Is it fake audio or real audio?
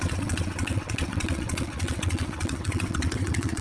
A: fake